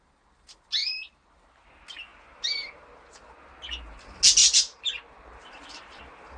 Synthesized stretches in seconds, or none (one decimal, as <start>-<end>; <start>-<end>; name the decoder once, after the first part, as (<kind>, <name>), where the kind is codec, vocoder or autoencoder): 0.8-1.7 (vocoder, BigVGAN v2); 2.1-3.3; 4.4-6.0

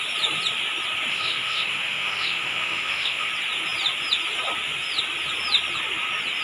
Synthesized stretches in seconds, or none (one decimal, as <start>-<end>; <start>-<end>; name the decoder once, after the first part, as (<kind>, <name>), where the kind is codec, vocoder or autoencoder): 1.1-3.3 (autoencoder, DAC-VAE)

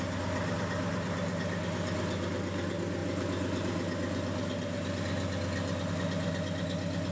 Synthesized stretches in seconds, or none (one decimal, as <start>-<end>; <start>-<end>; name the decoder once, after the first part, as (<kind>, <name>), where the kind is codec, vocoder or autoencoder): none

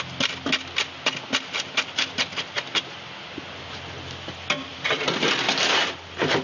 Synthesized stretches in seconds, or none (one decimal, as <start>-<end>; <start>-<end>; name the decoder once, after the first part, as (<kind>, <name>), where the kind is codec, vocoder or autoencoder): 4.7-5.6 (vocoder, BigVGAN v2)

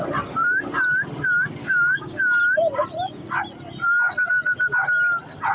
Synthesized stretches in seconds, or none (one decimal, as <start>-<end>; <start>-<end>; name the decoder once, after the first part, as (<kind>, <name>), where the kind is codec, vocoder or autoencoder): 1.6-2.4 (codec, DAC)

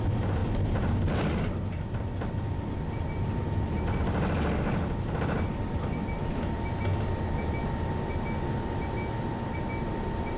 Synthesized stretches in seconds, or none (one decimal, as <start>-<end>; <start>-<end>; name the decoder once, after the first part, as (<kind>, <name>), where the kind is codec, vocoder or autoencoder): none